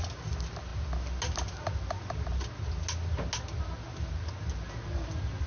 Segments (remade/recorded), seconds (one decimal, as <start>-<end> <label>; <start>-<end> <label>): 0.0-5.5 recorded